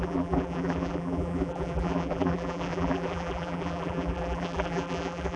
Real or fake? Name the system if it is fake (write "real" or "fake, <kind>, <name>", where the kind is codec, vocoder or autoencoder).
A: fake, vocoder, BigVGAN v2